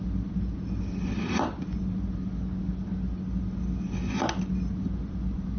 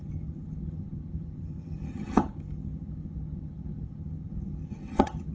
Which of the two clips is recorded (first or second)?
first